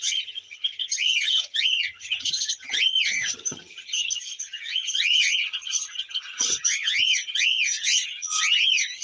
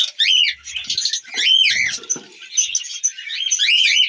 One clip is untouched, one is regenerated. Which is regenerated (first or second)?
first